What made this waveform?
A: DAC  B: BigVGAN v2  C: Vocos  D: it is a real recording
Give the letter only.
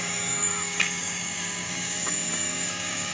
A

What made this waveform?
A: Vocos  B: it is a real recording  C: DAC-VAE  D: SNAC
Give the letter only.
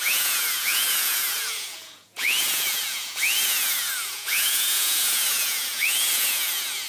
A